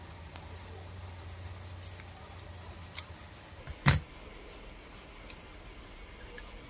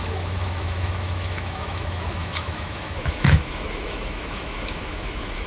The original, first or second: first